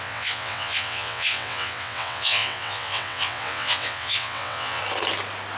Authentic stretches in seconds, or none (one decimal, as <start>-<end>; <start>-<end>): 4.8-5.6